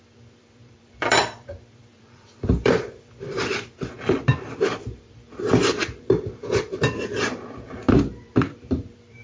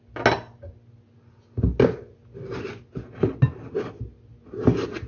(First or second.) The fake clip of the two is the first